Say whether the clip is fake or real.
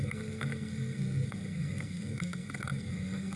fake